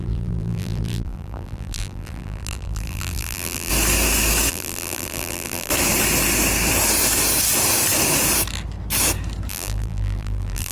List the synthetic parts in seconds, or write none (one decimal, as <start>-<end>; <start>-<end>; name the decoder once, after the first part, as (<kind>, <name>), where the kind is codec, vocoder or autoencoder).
0.0-3.7 (vocoder, BigVGAN v2); 4.5-5.7; 9.5-10.7